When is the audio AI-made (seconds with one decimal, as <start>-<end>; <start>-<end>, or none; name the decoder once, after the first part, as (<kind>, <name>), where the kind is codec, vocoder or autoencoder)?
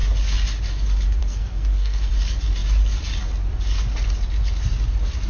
1.2-2.1 (codec, SNAC)